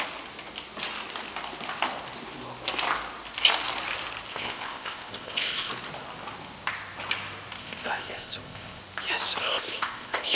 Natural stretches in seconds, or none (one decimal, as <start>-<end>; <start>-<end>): 0.0-4.3; 5.7-7.6; 8.8-9.4